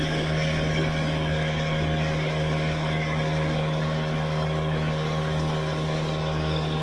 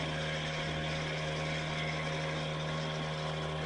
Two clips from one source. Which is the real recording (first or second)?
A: second